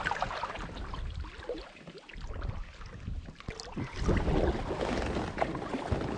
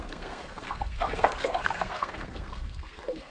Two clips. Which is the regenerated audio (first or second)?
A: second